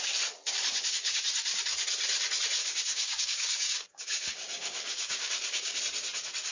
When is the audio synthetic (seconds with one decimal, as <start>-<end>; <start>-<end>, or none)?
0.7-1.3; 2.6-5.8